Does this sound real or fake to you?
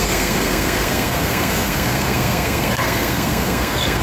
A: fake